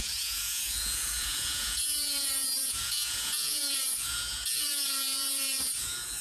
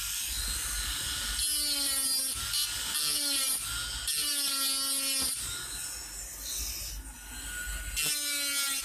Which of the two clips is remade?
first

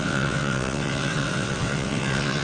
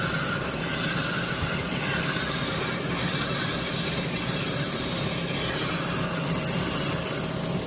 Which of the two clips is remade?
first